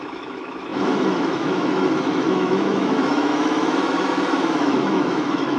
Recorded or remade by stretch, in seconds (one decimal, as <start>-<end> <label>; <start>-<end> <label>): 0.0-5.6 remade